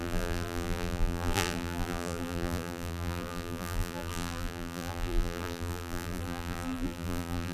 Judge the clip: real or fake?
fake